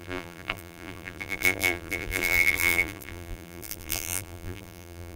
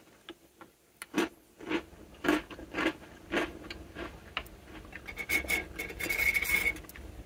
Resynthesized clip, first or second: first